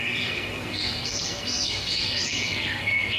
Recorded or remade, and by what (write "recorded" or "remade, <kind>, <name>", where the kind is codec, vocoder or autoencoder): remade, codec, SNAC